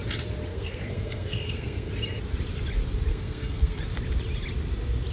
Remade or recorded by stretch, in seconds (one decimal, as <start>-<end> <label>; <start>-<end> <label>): 0.0-0.5 recorded; 0.5-1.9 remade; 1.9-3.1 recorded; 3.1-3.8 remade; 3.8-5.1 recorded